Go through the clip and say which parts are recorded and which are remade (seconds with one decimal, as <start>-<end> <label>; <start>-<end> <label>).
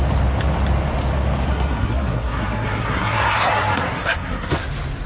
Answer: 0.0-1.5 recorded; 1.5-4.6 remade; 4.6-5.1 recorded